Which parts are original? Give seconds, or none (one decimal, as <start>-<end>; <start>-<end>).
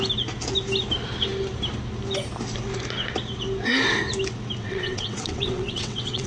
0.0-4.6